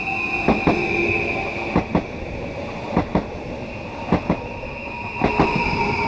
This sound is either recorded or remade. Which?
recorded